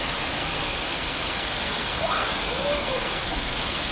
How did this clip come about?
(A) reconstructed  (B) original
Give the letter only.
A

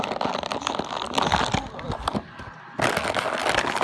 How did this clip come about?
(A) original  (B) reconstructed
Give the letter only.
A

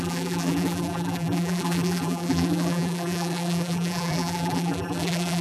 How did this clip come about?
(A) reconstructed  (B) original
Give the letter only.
A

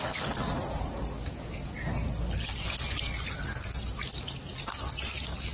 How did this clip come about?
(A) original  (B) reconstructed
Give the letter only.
A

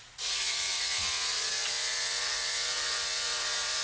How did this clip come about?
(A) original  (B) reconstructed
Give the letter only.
B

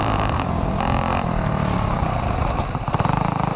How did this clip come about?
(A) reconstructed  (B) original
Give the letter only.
B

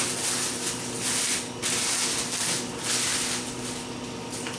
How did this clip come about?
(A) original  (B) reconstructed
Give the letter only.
A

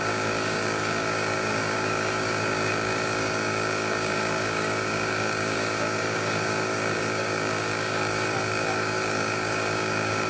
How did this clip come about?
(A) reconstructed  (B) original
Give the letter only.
A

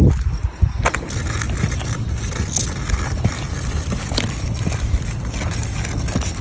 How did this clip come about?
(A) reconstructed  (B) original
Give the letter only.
B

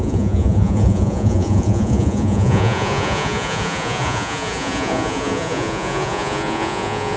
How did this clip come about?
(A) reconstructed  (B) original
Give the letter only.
A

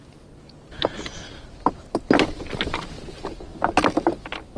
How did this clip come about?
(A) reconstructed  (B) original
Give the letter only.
B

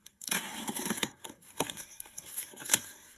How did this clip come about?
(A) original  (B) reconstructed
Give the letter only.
B